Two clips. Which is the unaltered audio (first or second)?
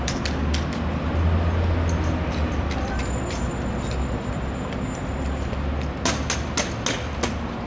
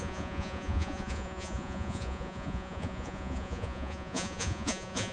first